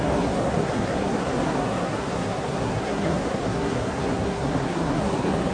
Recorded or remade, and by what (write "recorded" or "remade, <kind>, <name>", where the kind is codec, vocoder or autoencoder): remade, codec, SNAC